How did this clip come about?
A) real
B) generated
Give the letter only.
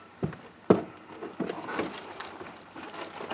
B